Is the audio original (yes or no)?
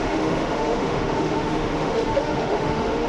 no